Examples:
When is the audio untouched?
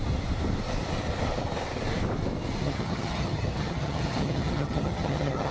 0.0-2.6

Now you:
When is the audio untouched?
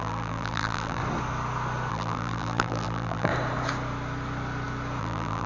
1.0-1.9; 3.3-5.0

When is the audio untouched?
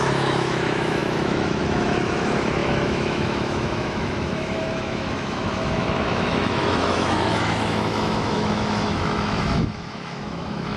none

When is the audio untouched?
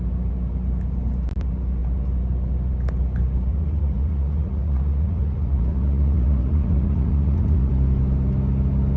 0.0-3.5; 7.7-9.0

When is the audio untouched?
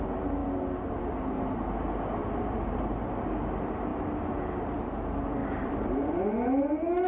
0.0-2.2; 3.1-5.4; 6.2-7.1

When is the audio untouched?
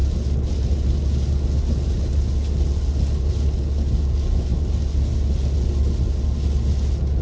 0.0-7.2